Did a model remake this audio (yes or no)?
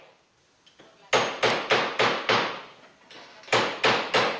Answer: no